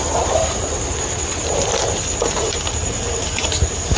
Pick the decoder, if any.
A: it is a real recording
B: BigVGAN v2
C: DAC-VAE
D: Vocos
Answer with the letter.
A